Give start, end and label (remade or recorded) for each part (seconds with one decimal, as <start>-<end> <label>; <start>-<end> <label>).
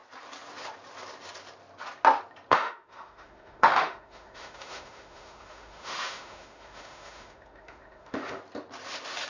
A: 0.0-2.5 recorded; 2.5-8.4 remade; 8.4-9.3 recorded